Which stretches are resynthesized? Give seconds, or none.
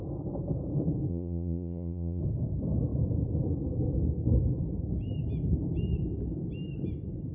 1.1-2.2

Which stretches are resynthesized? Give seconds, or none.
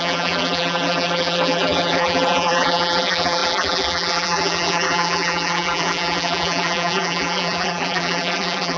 0.0-8.8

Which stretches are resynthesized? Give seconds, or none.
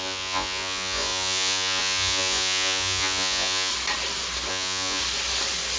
0.0-3.7; 4.5-5.0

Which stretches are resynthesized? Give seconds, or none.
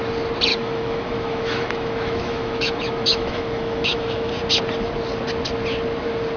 0.5-4.3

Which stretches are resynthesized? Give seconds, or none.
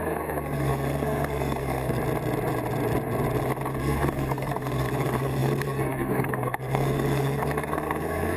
0.0-2.0; 3.8-8.4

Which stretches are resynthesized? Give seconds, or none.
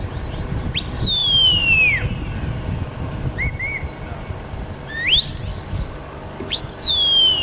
5.5-6.9